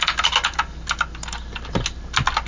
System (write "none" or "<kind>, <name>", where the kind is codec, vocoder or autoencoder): none